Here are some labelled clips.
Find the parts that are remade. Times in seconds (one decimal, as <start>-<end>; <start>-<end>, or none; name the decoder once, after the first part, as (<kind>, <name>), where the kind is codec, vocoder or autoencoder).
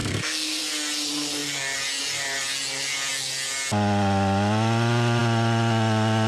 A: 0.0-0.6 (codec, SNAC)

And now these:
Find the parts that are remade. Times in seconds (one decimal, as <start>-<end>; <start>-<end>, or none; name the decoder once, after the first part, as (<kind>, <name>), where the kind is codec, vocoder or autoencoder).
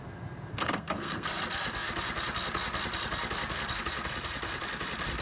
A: 0.5-1.3 (codec, SNAC)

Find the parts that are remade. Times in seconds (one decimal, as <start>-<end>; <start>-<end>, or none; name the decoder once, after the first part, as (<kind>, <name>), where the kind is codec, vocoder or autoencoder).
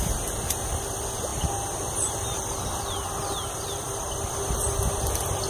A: none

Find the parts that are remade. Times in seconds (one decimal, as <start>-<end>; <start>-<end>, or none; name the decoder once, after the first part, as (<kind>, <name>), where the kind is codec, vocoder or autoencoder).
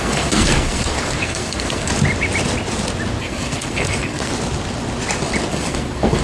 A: 0.0-1.9 (codec, SNAC); 3.2-4.3; 5.5-6.2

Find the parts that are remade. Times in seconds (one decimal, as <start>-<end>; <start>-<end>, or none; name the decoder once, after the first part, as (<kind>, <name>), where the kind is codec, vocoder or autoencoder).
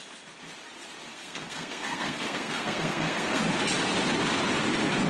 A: 1.1-3.4 (codec, SNAC)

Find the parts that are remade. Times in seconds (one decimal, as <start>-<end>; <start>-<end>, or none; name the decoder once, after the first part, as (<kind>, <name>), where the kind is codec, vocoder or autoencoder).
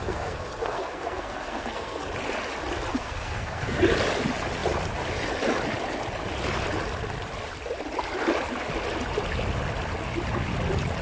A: 0.0-2.1 (codec, SNAC); 2.9-3.8